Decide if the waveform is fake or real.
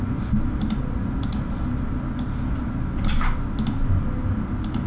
real